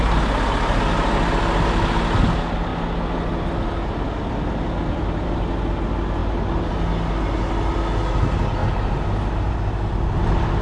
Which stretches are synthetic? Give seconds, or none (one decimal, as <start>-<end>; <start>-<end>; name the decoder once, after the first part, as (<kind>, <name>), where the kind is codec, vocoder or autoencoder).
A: none